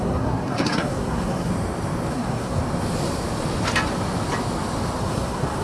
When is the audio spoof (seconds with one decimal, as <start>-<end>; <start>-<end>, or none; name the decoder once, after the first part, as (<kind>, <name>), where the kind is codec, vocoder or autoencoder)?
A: 0.0-1.5 (codec, SNAC); 2.1-2.6; 5.0-5.6